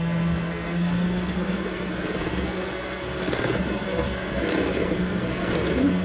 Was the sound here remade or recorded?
remade